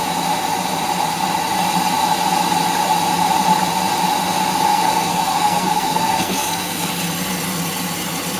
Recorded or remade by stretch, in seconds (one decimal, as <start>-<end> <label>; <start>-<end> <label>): 0.0-4.7 recorded; 4.7-6.9 remade; 6.9-8.4 recorded